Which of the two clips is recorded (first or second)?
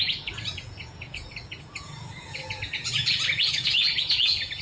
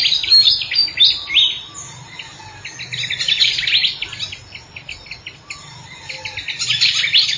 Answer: second